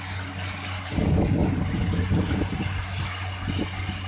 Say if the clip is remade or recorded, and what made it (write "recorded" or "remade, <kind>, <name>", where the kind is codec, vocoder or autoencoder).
recorded